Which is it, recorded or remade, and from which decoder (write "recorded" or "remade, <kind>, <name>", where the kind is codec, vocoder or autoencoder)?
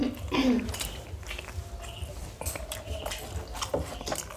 recorded